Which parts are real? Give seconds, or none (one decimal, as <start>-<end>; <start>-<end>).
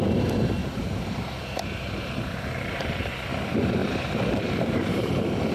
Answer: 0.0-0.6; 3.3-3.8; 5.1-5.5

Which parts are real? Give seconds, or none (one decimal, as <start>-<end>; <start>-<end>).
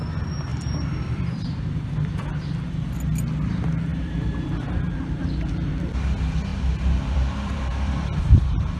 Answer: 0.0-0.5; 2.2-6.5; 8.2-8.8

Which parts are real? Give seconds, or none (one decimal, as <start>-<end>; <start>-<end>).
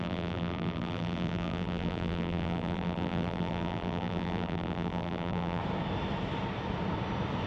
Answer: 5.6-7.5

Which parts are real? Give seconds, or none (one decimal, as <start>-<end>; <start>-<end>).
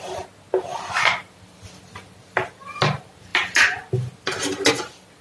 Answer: 0.0-5.2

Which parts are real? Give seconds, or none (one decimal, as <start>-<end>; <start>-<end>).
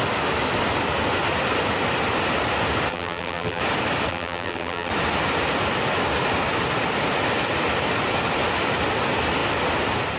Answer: 0.0-2.9; 3.6-4.1; 4.9-10.2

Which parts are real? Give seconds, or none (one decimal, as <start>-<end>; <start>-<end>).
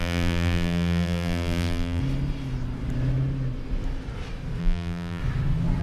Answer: 2.0-4.6; 5.2-5.8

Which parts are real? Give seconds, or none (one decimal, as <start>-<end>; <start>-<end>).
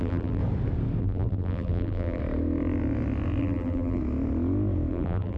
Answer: 0.4-1.0; 2.2-3.4; 4.0-4.9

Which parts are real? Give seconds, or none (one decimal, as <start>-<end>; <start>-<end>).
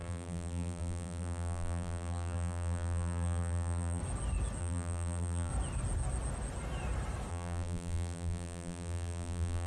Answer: 4.0-4.6; 5.5-7.3